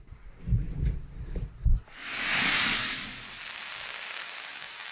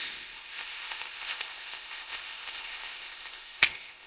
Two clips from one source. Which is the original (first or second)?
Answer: first